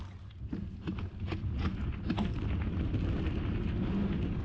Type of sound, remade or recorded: recorded